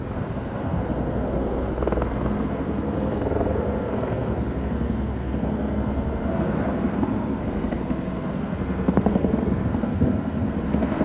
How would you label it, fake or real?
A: fake